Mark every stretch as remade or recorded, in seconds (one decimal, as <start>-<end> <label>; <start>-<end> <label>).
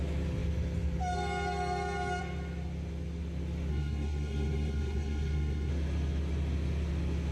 0.0-3.7 recorded; 3.7-5.7 remade; 5.7-7.3 recorded